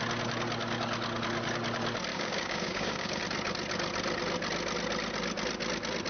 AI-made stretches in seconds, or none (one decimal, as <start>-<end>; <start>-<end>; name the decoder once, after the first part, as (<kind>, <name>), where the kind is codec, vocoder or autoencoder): 2.1-3.2 (codec, DAC)